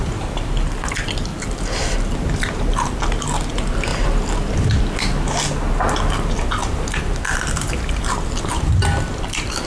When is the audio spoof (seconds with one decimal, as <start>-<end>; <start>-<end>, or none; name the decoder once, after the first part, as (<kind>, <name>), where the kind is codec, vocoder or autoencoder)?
1.3-3.0 (vocoder, BigVGAN v2); 3.9-4.8; 6.6-8.7